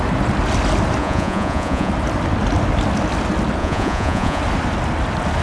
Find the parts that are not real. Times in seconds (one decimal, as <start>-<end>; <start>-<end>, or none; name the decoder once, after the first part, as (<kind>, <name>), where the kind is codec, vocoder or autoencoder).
1.0-1.9 (vocoder, Vocos); 3.6-4.4